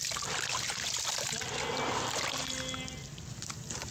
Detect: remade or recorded recorded